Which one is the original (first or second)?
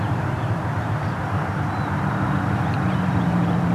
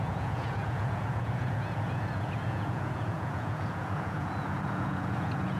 first